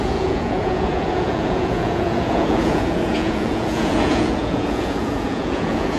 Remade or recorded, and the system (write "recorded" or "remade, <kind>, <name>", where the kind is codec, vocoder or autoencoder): remade, vocoder, Vocos